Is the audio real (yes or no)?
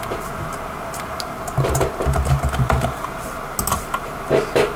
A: yes